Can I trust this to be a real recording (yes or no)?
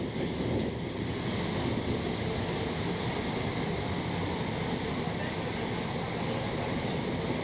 yes